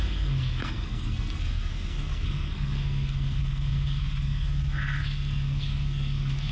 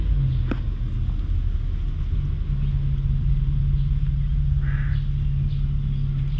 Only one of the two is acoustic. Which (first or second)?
second